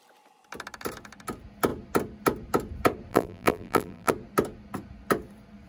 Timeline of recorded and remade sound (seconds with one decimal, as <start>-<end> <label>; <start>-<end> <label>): 0.0-3.1 recorded; 3.1-4.1 remade; 4.1-5.7 recorded